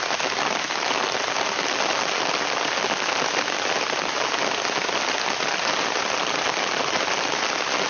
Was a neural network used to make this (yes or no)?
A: no